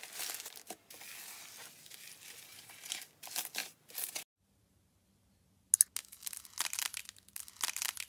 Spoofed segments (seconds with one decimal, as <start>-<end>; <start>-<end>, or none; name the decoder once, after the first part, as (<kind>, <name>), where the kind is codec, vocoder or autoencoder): 2.5-3.1 (vocoder, BigVGAN v2); 3.6-5.7